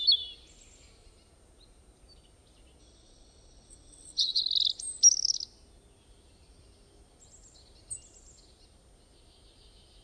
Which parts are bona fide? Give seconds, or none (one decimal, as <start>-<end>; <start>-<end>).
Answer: 0.0-2.8; 4.4-10.0